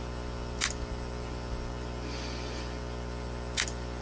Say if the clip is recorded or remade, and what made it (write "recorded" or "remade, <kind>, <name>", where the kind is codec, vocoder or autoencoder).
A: recorded